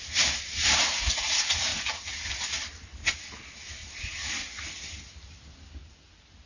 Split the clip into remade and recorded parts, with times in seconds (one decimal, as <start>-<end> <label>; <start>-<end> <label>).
0.0-6.5 recorded